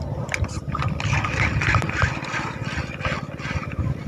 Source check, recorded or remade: recorded